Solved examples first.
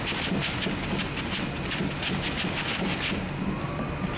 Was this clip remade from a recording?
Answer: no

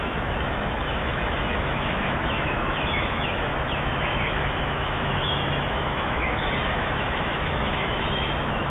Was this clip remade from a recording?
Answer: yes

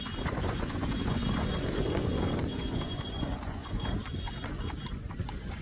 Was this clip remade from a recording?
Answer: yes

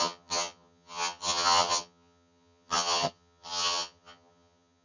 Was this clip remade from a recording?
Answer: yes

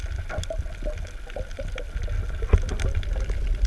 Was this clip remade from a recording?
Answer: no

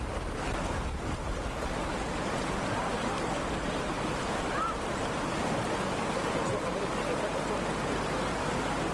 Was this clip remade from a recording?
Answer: no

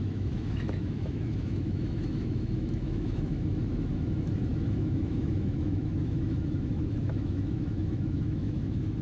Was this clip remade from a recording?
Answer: yes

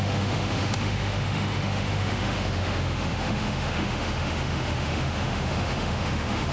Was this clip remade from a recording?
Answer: yes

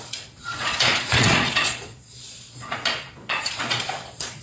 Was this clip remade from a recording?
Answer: yes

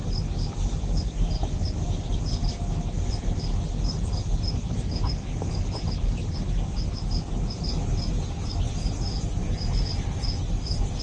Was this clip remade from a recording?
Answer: no